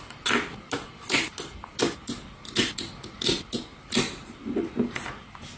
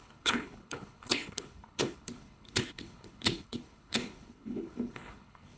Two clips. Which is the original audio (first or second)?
first